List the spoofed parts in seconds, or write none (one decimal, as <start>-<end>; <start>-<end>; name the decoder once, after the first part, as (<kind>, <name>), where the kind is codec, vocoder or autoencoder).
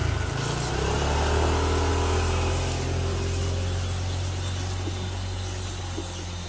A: none